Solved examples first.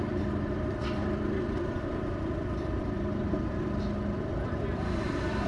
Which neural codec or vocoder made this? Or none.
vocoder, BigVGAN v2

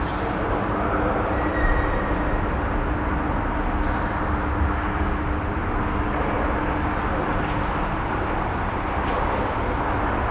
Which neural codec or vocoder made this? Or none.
none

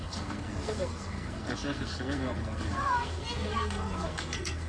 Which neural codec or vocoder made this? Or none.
codec, SNAC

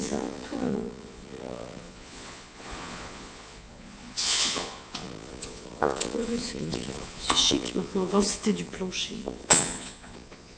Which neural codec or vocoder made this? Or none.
vocoder, Vocos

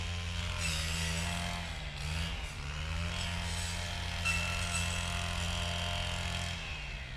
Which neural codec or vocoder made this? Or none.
none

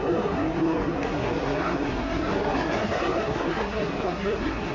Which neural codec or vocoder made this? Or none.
codec, SNAC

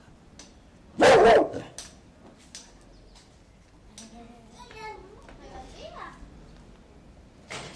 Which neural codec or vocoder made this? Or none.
none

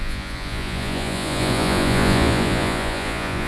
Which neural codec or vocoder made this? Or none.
vocoder, Vocos